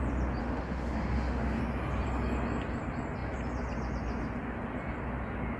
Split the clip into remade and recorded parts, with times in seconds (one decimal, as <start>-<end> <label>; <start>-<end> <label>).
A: 0.0-0.4 recorded; 0.4-1.6 remade; 1.6-5.6 recorded